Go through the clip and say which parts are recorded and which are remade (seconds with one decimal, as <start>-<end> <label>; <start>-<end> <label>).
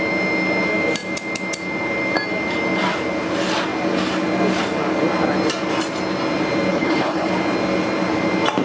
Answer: 0.0-6.7 recorded; 6.7-7.3 remade; 7.3-8.6 recorded